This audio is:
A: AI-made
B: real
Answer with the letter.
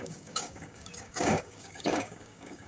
A